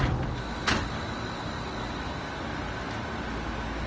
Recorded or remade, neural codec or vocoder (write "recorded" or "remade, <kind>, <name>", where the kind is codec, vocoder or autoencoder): recorded